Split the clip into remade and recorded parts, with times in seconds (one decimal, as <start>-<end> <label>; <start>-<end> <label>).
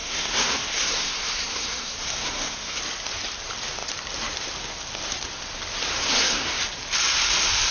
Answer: 0.0-2.8 remade; 2.8-5.9 recorded; 5.9-6.6 remade; 6.6-7.7 recorded